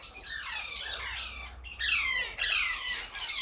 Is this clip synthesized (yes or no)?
no